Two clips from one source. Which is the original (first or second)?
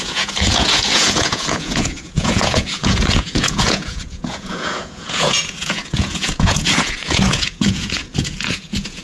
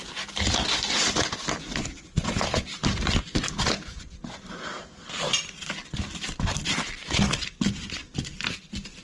second